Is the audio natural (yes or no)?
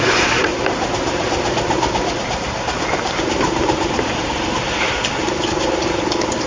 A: no